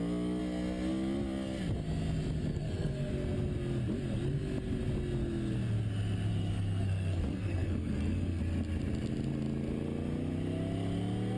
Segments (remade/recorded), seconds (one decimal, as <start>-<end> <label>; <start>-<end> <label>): 0.0-2.5 recorded; 2.5-3.1 remade; 3.1-6.3 recorded; 6.3-8.4 remade; 8.4-11.4 recorded